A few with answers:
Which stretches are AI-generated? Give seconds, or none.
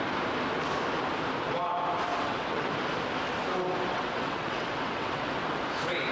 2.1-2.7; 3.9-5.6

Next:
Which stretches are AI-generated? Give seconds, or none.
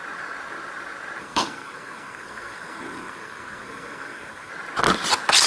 1.2-4.5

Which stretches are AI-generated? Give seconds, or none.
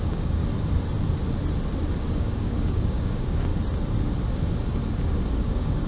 0.0-0.4; 2.2-3.5; 5.4-5.9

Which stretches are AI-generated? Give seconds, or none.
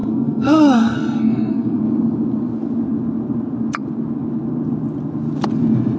0.0-1.8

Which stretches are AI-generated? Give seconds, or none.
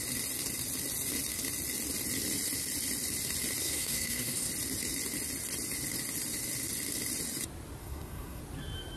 3.6-4.5; 7.8-8.4